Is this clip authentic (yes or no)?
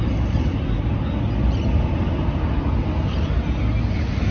yes